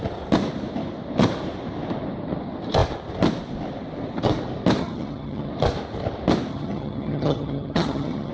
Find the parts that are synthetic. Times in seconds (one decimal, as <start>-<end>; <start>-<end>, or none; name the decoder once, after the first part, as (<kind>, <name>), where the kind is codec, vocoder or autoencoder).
4.8-5.5 (vocoder, HiFi-GAN); 6.5-8.3